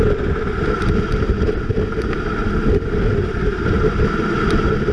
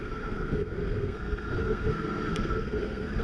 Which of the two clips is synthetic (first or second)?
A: second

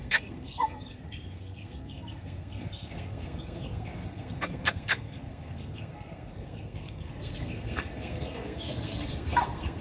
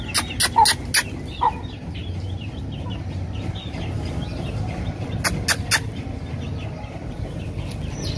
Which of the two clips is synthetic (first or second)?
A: first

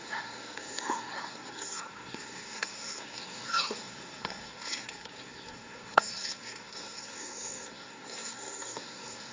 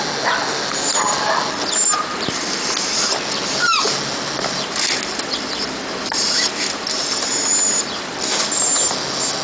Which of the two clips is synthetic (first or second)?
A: first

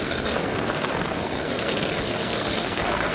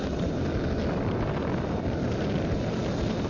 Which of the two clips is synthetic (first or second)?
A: first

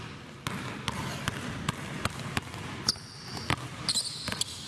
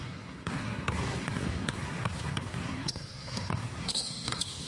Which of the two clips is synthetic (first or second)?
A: second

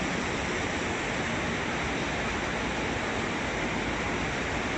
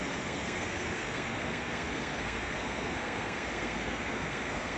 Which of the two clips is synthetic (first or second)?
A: second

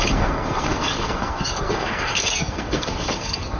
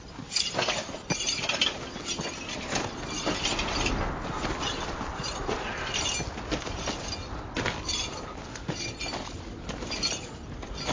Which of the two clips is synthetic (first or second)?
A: first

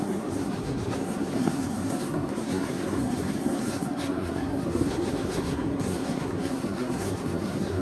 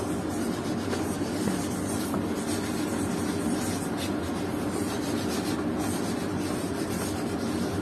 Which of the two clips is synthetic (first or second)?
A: first